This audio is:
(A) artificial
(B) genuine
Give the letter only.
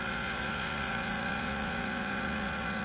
A